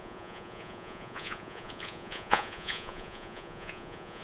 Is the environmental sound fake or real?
fake